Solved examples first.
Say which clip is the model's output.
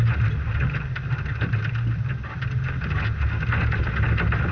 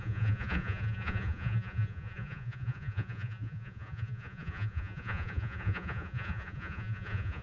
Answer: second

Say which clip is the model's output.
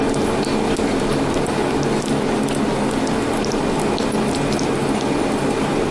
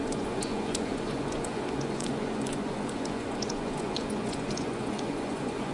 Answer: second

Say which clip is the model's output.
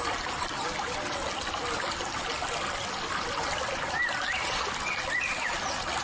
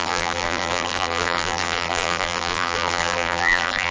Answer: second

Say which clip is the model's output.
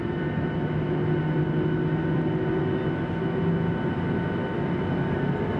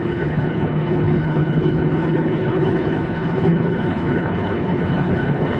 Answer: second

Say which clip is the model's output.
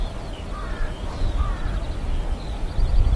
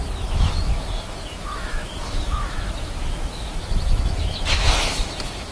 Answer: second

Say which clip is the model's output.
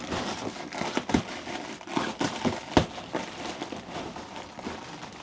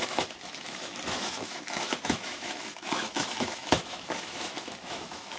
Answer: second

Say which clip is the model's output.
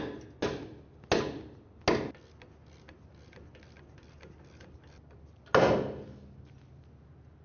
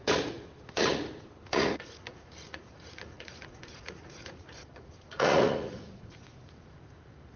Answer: second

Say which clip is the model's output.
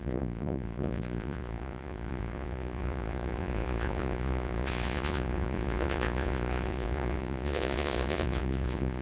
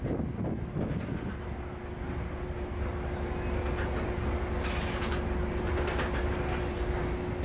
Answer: first